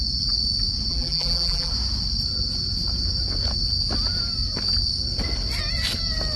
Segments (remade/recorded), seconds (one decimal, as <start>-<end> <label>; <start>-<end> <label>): 0.0-0.9 recorded; 0.9-1.7 remade; 1.7-6.4 recorded